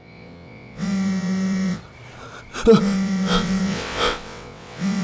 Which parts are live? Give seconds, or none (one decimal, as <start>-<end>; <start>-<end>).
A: 1.8-2.8